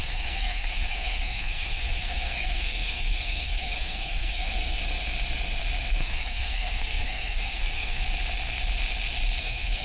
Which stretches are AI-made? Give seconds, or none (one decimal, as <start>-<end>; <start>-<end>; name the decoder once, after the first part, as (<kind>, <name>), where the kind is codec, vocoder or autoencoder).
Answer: 0.0-4.8 (codec, SNAC); 6.0-8.0; 9.4-9.8